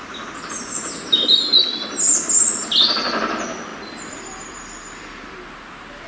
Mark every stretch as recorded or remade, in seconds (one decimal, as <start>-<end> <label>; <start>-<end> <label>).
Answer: 0.0-6.1 recorded